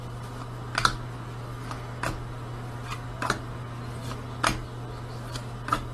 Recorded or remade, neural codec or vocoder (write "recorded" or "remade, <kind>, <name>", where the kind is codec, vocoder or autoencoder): recorded